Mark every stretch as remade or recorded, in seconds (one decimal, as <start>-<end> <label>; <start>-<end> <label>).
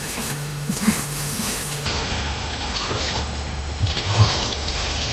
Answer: 0.0-5.1 remade